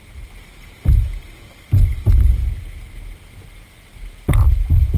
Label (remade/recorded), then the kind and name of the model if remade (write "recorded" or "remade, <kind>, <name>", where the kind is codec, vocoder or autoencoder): recorded